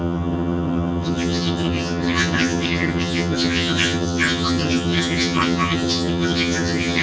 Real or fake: fake